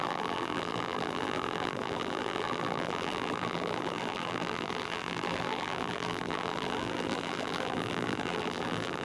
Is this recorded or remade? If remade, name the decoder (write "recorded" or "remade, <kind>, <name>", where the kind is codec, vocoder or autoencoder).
remade, vocoder, BigVGAN v2